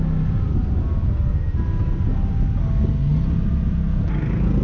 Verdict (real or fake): real